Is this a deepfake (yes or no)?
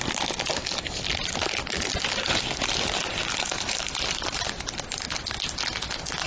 no